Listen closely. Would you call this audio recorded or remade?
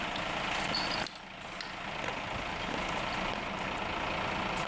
recorded